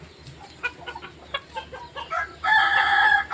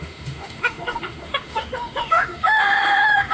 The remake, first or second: second